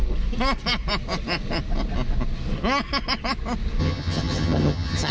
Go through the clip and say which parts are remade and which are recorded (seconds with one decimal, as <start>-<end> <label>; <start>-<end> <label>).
0.0-3.8 recorded; 3.8-5.1 remade